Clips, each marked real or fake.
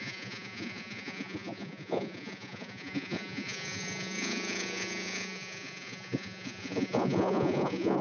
fake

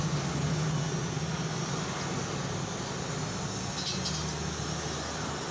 real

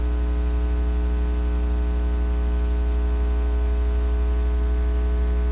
real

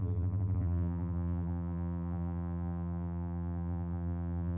fake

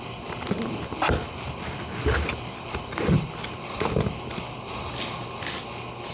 real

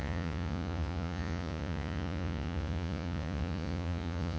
fake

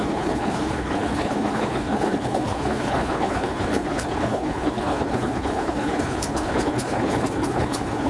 fake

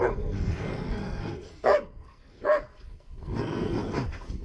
fake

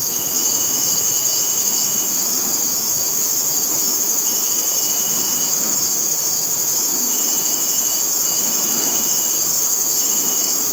fake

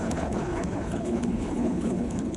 fake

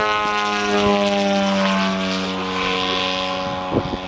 real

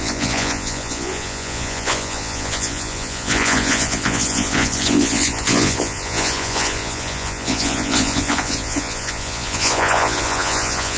fake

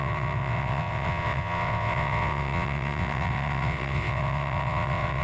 fake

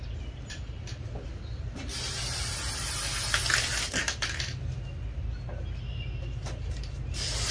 real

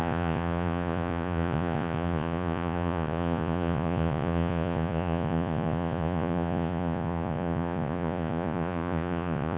fake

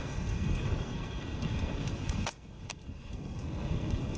fake